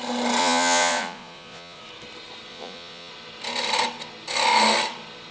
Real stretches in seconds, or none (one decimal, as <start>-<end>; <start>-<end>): 0.0-0.4; 1.8-2.5; 3.1-5.3